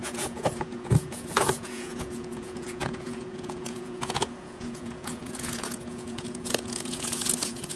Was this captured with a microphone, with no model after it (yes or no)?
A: no